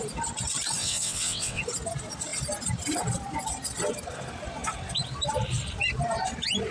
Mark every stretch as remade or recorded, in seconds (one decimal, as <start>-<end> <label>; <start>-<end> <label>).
0.0-0.8 recorded; 0.8-1.6 remade; 1.6-6.7 recorded